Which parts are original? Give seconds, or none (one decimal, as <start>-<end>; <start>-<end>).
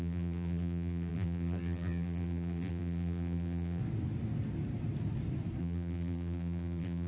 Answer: 3.8-5.6